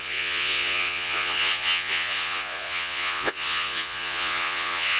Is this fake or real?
fake